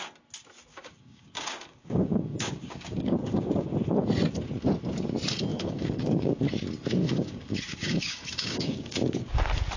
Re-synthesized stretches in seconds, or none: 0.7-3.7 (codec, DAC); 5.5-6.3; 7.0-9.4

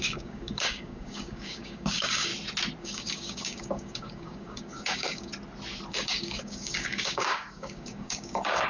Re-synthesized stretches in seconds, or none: 0.0-2.3 (codec, DAC); 2.8-5.3; 5.9-8.7

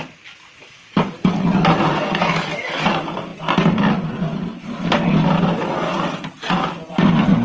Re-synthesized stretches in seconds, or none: 0.6-1.3 (codec, DAC); 2.2-2.8